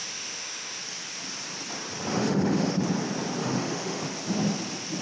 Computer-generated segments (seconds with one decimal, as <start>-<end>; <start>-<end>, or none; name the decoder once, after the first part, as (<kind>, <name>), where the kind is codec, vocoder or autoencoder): 0.0-0.8 (autoencoder, DAC-VAE); 2.1-2.8; 3.4-4.0